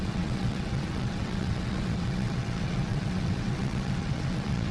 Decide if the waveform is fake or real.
fake